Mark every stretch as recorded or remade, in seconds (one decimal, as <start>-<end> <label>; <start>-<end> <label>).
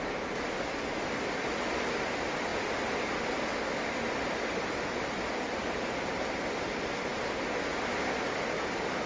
0.0-9.1 recorded